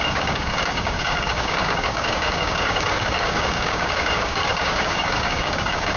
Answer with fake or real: fake